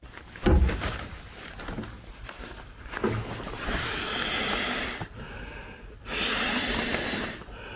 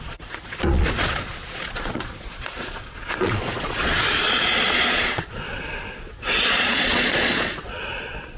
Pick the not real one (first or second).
second